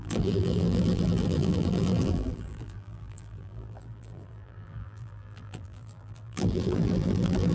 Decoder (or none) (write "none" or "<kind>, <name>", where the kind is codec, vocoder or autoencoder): vocoder, BigVGAN v2